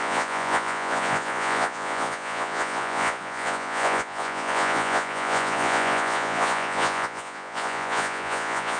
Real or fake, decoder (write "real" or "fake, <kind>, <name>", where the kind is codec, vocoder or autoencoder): fake, vocoder, Vocos